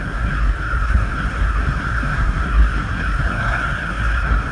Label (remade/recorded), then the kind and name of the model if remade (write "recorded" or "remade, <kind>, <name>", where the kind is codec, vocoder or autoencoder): remade, codec, SNAC